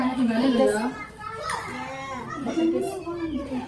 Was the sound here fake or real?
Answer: fake